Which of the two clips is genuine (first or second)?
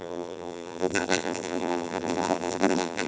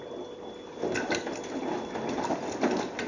second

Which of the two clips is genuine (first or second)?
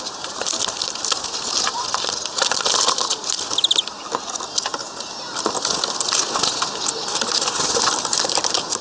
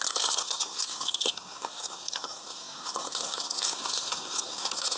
first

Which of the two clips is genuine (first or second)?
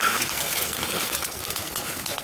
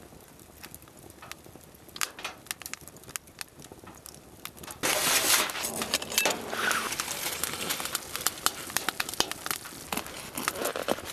second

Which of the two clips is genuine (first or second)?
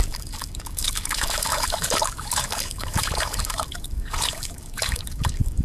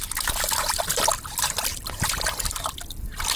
second